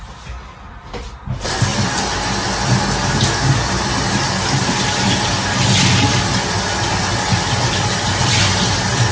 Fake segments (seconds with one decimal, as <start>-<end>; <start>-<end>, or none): none